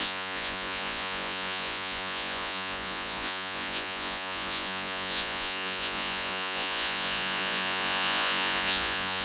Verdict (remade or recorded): remade